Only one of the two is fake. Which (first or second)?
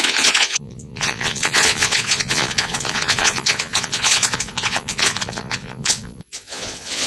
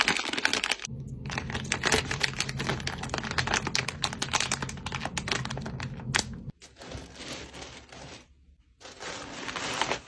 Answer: first